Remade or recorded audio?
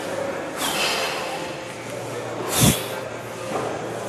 recorded